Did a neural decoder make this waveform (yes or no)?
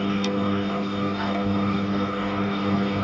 yes